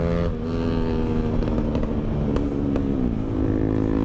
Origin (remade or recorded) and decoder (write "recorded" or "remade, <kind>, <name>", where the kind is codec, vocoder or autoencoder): recorded